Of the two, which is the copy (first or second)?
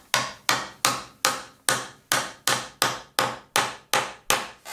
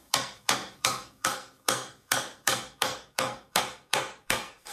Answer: second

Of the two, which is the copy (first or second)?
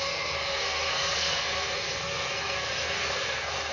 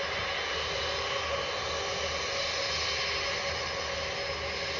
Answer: first